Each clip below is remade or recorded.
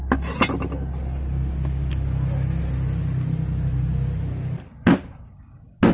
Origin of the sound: recorded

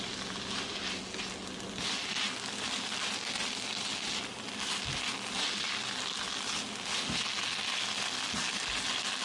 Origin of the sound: recorded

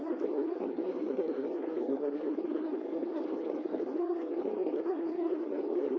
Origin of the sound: remade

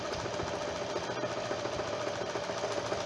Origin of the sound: recorded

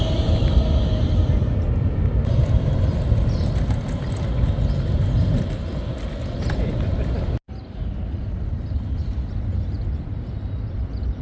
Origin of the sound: recorded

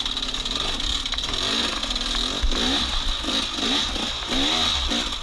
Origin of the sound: recorded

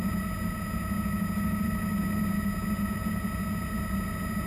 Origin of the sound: recorded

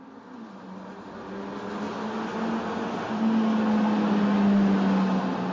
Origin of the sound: recorded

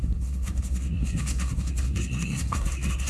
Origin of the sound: remade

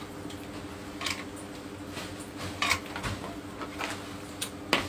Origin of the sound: recorded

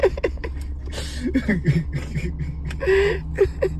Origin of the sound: recorded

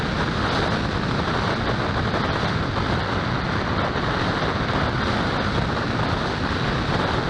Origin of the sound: recorded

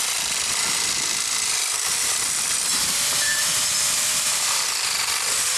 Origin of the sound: remade